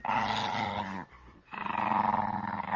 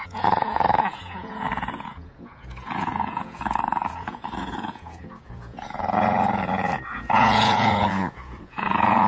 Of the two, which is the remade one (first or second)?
second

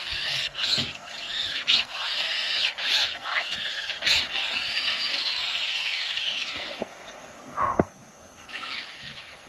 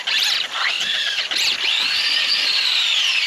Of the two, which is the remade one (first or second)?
first